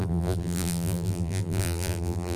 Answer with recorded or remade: remade